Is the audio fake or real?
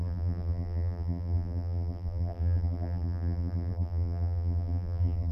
fake